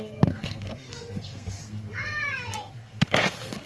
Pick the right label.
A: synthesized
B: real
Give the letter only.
A